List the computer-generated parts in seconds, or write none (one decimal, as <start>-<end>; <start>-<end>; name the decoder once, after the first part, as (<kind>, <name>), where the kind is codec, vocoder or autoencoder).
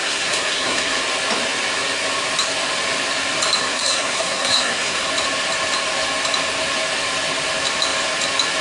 0.0-1.0 (codec, SNAC); 3.6-5.1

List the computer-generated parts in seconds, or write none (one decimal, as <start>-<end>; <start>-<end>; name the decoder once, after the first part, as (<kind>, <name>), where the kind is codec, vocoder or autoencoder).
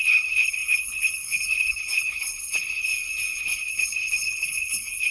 0.0-2.9 (codec, HILCodec); 3.4-5.1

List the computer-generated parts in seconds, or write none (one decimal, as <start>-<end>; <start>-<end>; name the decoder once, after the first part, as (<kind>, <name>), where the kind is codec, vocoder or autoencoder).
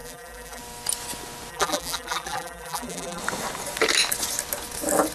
0.0-0.6 (vocoder, BigVGAN v2); 1.5-3.2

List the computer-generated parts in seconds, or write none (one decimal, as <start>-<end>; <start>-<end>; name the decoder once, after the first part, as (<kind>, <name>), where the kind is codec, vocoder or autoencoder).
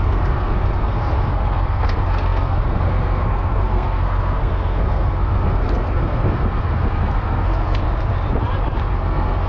0.0-7.8 (codec, SNAC); 9.0-9.5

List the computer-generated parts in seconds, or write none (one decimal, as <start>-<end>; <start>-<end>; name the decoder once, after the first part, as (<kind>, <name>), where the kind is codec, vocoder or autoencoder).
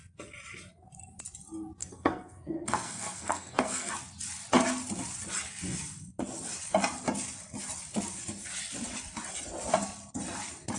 1.8-3.9 (codec, SNAC)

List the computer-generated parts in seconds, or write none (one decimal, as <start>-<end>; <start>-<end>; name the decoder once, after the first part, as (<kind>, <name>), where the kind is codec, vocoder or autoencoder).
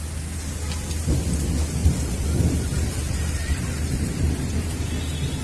1.8-4.9 (vocoder, BigVGAN v2)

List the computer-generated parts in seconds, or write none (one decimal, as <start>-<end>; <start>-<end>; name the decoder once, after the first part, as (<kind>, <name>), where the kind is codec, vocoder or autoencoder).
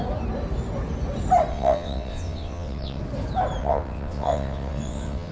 1.5-3.0 (vocoder, WaveNeXt); 3.6-5.3